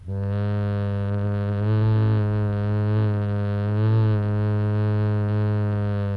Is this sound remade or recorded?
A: recorded